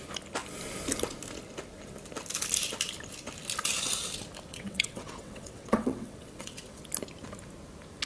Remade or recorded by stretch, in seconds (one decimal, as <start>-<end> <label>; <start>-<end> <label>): 0.0-4.5 recorded; 4.5-6.8 remade; 6.8-8.1 recorded